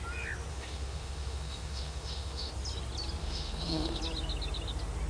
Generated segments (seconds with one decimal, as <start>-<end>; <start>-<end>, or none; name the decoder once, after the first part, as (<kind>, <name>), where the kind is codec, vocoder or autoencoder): 0.5-2.5 (autoencoder, DAC-VAE); 3.2-4.0